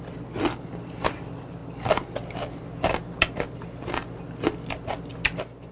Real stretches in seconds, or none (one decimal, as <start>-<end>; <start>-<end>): 1.6-4.9